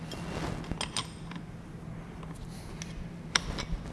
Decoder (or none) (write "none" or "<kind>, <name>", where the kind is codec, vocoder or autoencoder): none